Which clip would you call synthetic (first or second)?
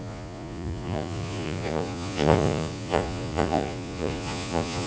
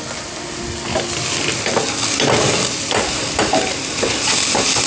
first